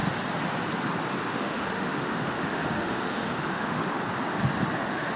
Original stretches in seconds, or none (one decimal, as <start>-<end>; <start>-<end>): 0.0-1.3; 3.8-4.8